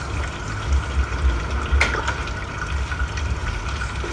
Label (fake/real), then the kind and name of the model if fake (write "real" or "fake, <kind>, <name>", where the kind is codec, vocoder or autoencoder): real